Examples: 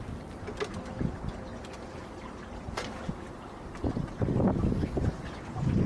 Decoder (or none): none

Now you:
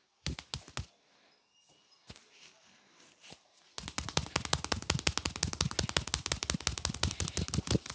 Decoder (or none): none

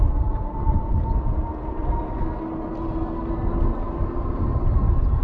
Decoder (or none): none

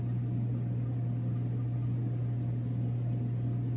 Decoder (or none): none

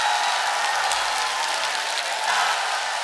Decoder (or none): none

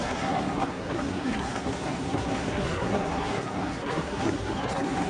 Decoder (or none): codec, SNAC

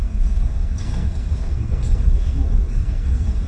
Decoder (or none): codec, SNAC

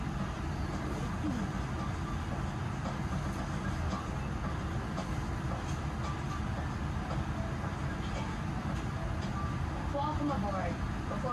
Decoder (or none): none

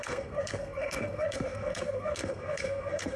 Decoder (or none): codec, SNAC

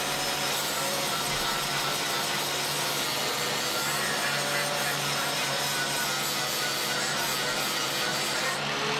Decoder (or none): none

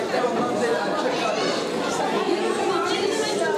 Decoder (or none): none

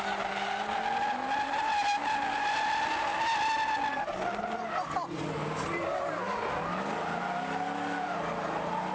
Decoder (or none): none